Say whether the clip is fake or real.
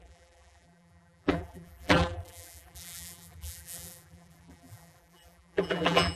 fake